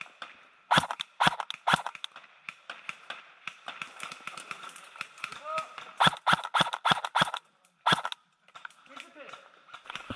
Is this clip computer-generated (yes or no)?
no